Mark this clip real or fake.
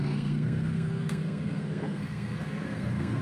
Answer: fake